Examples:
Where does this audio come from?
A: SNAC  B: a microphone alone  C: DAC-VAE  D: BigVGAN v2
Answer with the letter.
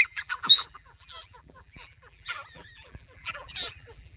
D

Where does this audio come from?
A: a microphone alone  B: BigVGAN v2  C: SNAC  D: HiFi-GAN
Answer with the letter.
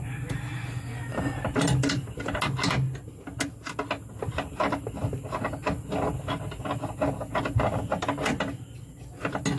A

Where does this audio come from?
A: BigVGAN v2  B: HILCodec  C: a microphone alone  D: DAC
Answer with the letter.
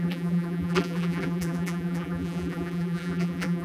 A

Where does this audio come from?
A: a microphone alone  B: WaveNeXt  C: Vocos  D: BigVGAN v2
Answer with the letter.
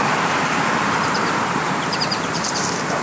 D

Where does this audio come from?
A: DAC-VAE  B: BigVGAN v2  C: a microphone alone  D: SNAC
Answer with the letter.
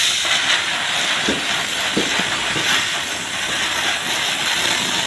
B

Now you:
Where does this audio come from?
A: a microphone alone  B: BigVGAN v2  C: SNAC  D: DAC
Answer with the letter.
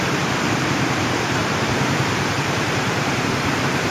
B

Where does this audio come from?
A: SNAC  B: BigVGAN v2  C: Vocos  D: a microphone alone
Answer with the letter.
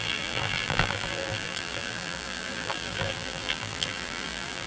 B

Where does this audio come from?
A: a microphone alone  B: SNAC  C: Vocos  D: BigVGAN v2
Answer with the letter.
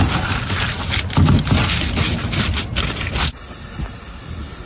A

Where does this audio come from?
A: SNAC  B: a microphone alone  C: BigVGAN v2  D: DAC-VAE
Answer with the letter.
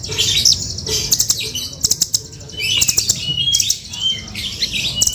B